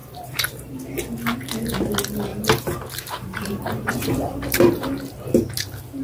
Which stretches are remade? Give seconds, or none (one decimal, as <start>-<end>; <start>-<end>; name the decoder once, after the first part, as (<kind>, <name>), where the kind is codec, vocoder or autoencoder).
0.0-0.7 (vocoder, BigVGAN v2); 2.3-4.9